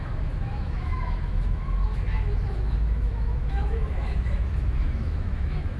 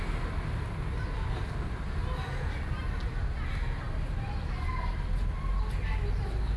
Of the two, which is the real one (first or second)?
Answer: second